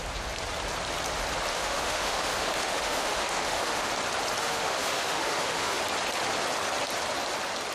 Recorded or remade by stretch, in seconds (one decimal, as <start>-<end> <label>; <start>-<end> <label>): 0.0-1.5 recorded; 1.5-3.9 remade; 3.9-4.4 recorded; 4.4-5.8 remade; 5.8-7.7 recorded